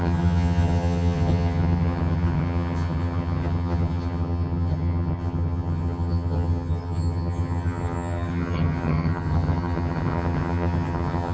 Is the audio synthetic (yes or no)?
yes